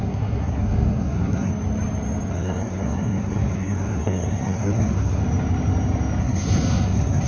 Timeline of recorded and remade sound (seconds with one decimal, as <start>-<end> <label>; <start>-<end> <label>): 0.0-1.5 remade; 1.5-2.3 recorded; 2.3-5.2 remade; 5.2-6.2 recorded; 6.2-7.3 remade

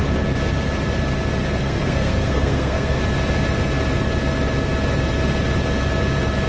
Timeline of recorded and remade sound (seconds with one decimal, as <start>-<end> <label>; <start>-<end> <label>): 0.0-1.6 recorded; 1.6-3.0 remade; 3.0-6.5 recorded

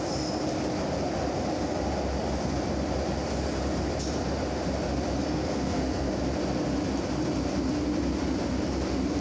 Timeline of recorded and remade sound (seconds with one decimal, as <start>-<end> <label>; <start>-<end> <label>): 0.0-5.2 recorded; 5.2-6.1 remade; 6.1-9.2 recorded

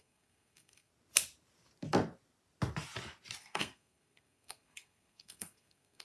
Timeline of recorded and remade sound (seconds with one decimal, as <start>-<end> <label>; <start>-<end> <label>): 0.0-0.9 remade; 0.9-3.4 recorded; 3.4-6.0 remade

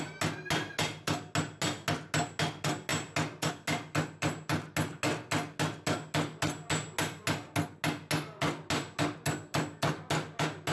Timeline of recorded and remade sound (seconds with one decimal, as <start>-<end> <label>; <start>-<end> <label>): 0.0-10.7 recorded

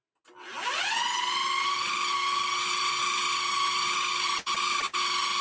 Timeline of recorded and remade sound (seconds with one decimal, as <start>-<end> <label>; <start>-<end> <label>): 0.0-5.4 recorded